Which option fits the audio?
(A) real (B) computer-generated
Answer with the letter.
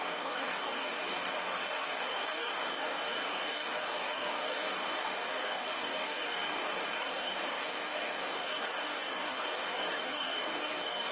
B